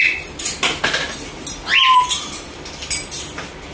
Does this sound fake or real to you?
real